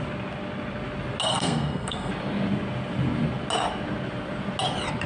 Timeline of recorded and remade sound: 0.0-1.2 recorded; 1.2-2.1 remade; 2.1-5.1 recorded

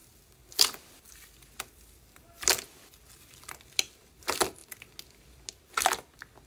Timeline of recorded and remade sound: 0.0-6.5 recorded

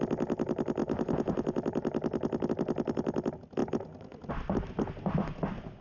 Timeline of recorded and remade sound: 0.0-5.8 recorded